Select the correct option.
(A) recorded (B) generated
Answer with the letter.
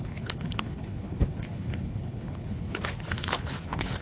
B